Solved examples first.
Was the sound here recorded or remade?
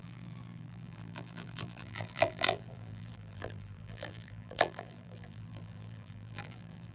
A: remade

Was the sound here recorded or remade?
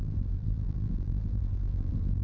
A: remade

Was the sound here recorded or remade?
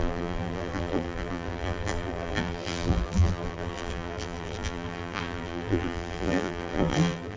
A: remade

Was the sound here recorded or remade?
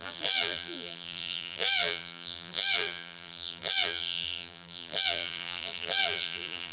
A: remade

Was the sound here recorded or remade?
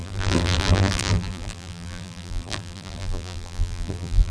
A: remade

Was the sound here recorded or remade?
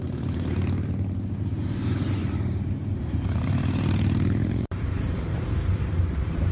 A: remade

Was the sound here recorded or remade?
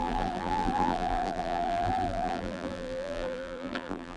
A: remade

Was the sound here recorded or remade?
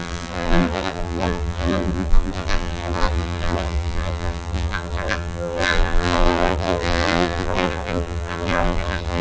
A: remade